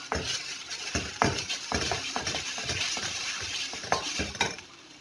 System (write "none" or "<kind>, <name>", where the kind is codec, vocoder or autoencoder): none